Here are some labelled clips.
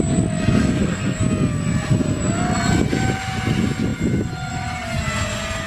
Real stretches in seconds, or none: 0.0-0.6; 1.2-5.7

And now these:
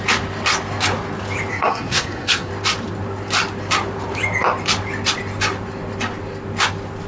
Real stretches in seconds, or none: 0.0-1.5; 2.5-7.1

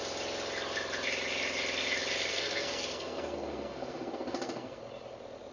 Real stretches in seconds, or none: 0.0-2.3; 4.8-5.5

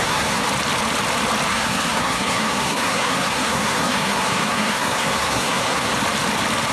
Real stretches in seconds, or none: 0.4-1.5; 5.9-6.7

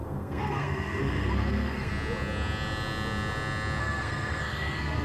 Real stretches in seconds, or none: 1.9-3.8

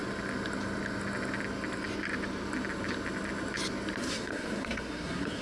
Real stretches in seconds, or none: 0.0-4.0

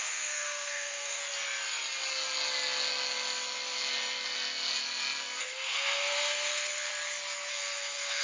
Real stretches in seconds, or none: 1.2-5.4; 6.9-7.5